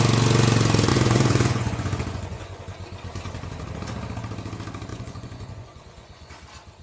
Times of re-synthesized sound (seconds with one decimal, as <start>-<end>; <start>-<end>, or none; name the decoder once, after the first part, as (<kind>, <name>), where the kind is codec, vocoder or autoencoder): 0.9-2.6 (vocoder, Vocos); 4.9-6.3